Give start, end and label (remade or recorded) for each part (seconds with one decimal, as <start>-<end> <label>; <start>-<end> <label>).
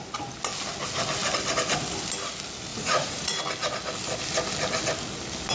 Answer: 0.0-2.7 recorded; 2.7-3.4 remade; 3.4-5.5 recorded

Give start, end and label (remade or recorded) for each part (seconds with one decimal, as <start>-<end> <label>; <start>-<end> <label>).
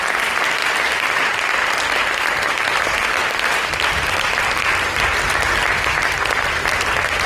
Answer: 0.0-0.6 recorded; 0.6-5.0 remade; 5.0-7.3 recorded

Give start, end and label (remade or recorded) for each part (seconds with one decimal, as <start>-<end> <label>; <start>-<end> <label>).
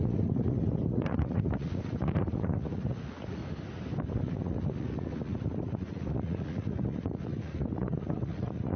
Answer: 0.0-3.4 remade; 3.4-4.1 recorded; 4.1-8.8 remade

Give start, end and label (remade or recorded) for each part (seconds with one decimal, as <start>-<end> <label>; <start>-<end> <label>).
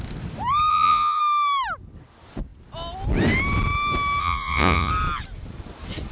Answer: 0.0-0.7 recorded; 0.7-1.2 remade; 1.2-4.2 recorded; 4.2-4.9 remade; 4.9-6.1 recorded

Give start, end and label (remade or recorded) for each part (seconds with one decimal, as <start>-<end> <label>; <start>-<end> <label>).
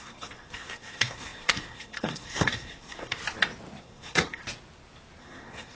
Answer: 0.0-3.2 remade; 3.2-3.8 recorded; 3.8-4.4 remade; 4.4-5.2 recorded; 5.2-5.7 remade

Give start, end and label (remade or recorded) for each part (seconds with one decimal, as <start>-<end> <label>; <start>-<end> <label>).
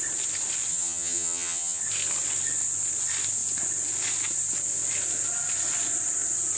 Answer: 0.0-0.7 recorded; 0.7-1.8 remade; 1.8-6.6 recorded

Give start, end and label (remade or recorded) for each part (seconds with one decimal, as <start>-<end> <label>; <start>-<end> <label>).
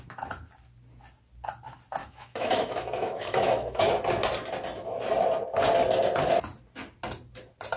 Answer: 0.0-2.0 recorded; 2.0-3.8 remade; 3.8-7.8 recorded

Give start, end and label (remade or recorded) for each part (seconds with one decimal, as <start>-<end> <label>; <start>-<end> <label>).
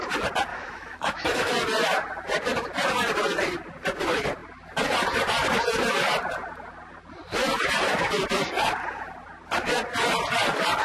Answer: 0.0-0.5 recorded; 0.5-1.5 remade; 1.5-10.8 recorded